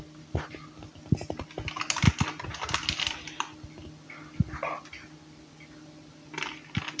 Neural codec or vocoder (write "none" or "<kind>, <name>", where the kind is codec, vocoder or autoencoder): none